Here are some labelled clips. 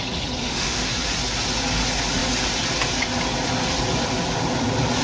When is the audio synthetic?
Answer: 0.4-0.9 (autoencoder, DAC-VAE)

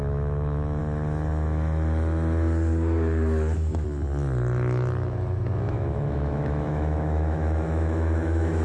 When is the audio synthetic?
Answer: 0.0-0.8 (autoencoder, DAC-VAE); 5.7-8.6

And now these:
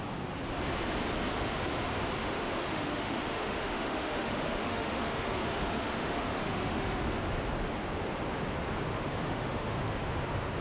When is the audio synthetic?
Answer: 2.2-7.0 (autoencoder, DAC-VAE); 8.9-10.1